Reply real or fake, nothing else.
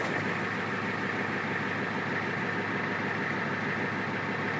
real